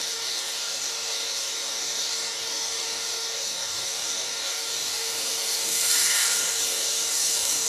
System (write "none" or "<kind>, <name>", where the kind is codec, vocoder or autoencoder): codec, DAC